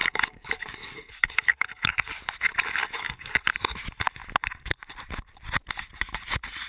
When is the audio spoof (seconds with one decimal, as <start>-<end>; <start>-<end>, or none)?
0.0-2.1; 2.8-3.4